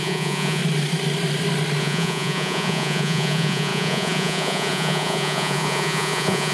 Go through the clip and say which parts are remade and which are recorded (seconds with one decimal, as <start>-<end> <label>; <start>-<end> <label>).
0.0-0.6 remade; 0.6-1.8 recorded; 1.8-6.5 remade